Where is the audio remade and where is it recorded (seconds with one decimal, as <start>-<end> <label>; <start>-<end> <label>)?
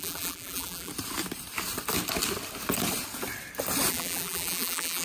0.0-0.9 remade; 0.9-3.9 recorded; 3.9-5.0 remade